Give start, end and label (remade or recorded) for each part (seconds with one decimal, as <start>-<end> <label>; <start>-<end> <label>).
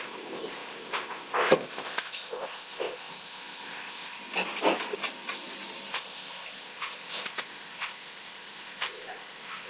0.0-4.2 remade; 4.2-5.9 recorded; 5.9-9.7 remade